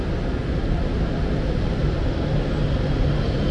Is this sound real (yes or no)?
yes